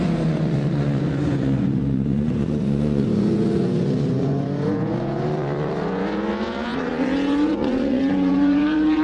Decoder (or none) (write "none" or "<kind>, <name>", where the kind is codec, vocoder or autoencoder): vocoder, Vocos